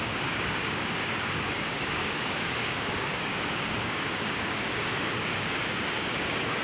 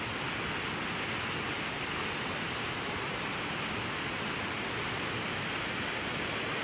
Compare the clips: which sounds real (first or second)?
second